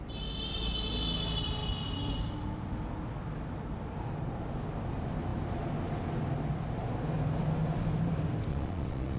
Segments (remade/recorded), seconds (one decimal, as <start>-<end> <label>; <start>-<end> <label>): 0.0-8.5 recorded; 8.5-9.2 remade